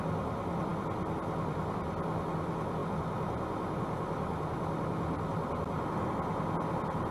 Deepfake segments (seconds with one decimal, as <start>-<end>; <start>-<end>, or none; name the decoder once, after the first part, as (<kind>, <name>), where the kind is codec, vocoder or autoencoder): none